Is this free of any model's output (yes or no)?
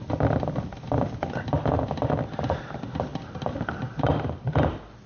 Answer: yes